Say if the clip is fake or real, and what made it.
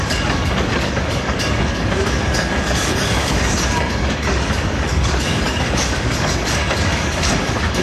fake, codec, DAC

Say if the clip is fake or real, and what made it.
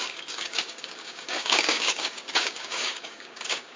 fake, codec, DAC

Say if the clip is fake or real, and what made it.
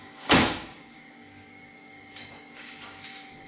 fake, codec, DAC